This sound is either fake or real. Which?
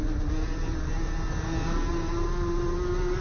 real